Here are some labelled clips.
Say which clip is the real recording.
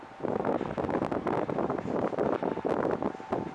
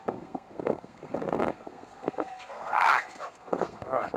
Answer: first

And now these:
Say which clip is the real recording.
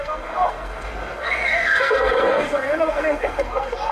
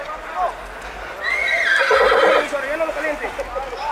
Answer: second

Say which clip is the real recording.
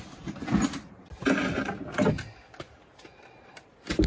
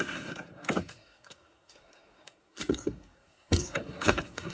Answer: first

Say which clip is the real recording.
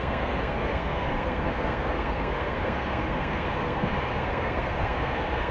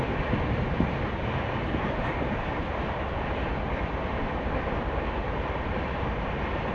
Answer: second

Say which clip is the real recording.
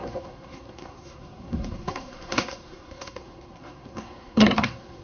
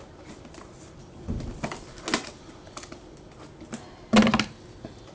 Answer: second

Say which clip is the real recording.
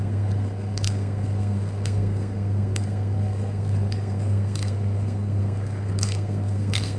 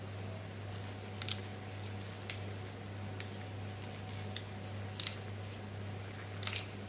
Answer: second